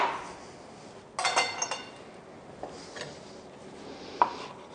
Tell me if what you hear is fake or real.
real